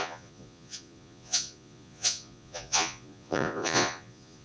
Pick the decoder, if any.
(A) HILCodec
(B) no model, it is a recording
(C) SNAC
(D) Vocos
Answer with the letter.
D